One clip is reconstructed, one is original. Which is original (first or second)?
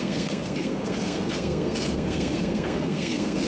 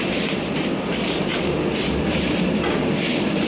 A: second